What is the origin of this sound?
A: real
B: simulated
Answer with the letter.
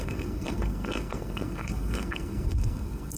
B